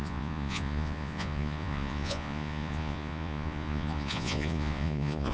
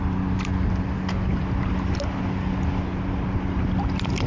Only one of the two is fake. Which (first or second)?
first